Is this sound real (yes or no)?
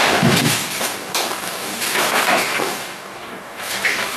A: no